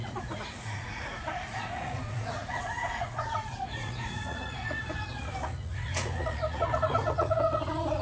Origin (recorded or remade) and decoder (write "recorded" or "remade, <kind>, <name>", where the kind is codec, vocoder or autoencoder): remade, vocoder, Vocos